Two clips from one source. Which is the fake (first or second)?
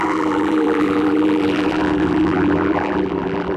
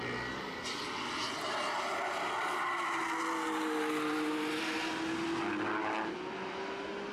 first